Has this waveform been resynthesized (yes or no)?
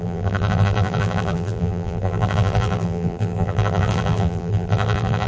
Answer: yes